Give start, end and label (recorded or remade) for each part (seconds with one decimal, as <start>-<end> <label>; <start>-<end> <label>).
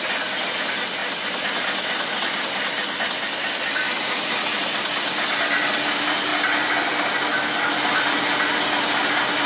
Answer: 0.0-9.5 recorded